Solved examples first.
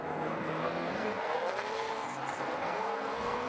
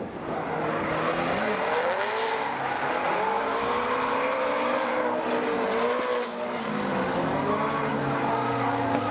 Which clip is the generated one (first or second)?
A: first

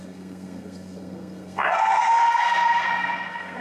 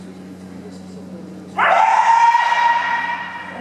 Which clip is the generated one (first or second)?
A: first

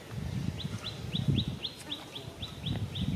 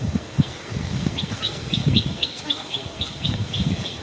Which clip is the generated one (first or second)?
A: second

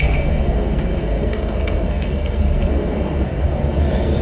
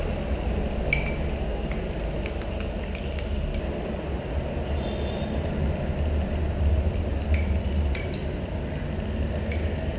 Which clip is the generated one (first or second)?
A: first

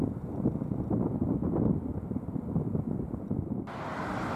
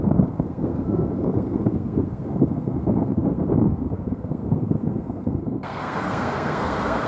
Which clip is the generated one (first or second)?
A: second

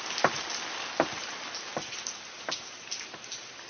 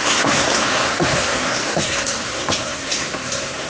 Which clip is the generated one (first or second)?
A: second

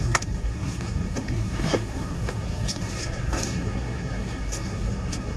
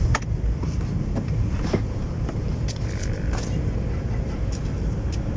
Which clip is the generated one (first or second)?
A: first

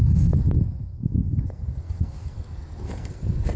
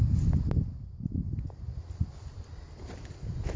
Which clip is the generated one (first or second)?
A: first